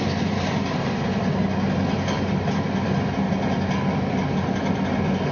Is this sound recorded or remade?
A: recorded